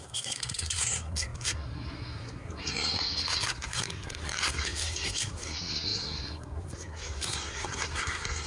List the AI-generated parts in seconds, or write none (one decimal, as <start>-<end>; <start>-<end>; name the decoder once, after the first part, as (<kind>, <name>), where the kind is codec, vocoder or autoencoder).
0.0-8.5 (codec, SNAC)